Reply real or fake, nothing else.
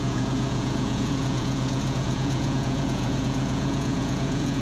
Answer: fake